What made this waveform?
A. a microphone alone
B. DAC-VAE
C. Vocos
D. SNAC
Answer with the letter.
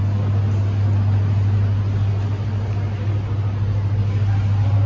A